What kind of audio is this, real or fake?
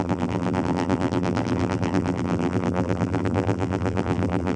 fake